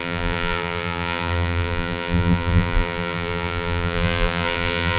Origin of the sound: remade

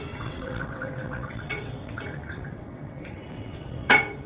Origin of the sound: remade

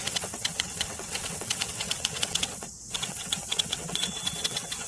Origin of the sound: remade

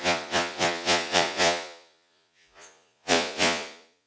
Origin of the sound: remade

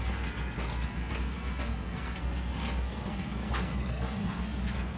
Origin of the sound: remade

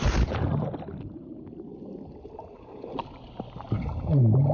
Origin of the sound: recorded